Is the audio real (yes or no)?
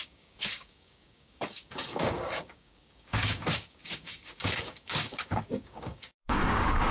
no